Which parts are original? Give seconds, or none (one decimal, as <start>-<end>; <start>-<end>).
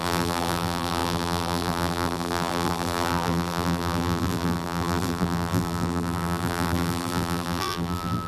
none